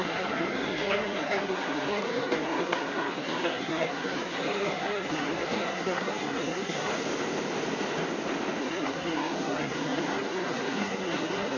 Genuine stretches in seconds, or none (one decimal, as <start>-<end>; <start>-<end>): 6.9-8.6